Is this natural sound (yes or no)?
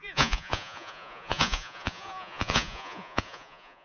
no